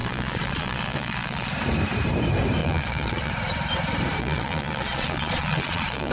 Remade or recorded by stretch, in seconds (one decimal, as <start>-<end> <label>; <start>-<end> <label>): 0.0-1.5 remade; 1.5-2.6 recorded; 2.6-3.3 remade; 3.3-4.2 recorded; 4.2-6.1 remade